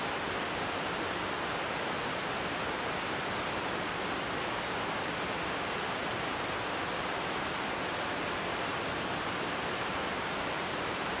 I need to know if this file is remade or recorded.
recorded